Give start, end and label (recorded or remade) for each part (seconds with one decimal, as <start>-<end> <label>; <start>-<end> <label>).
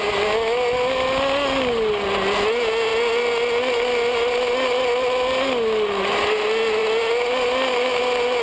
0.0-8.4 recorded